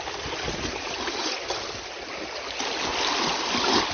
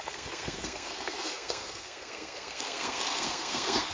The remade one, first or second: second